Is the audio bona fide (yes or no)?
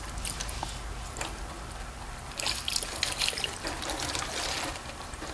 no